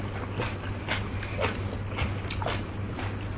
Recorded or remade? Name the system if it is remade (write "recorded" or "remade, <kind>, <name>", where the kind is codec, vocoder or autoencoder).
recorded